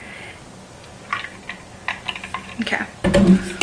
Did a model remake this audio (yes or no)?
no